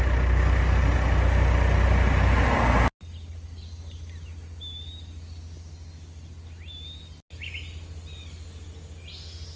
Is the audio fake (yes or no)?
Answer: no